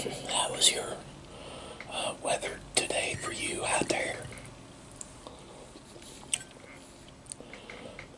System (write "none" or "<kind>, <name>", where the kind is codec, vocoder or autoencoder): none